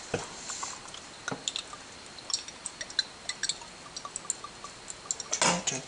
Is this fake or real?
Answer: real